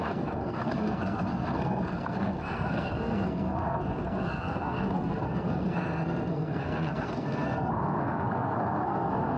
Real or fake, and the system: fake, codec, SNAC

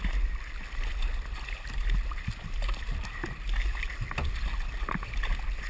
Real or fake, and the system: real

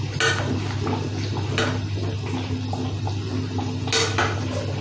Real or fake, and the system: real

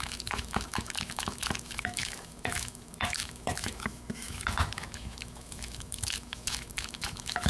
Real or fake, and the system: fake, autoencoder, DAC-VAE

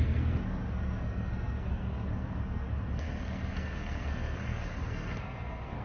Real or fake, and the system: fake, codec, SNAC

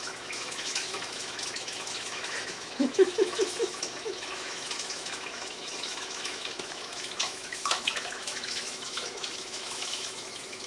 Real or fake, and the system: fake, autoencoder, DAC-VAE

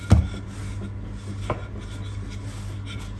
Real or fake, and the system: real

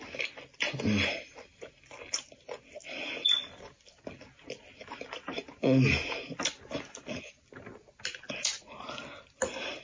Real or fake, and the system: real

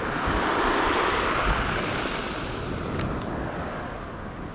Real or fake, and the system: real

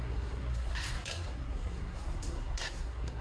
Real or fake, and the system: fake, codec, SNAC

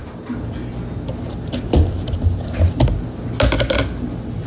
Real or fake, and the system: real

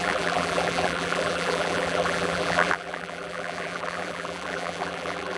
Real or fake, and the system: fake, vocoder, BigVGAN v2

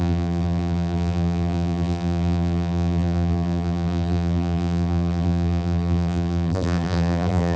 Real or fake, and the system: fake, vocoder, BigVGAN v2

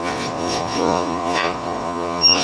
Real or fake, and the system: fake, vocoder, Vocos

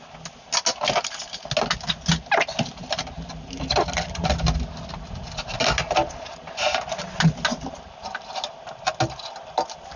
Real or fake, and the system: real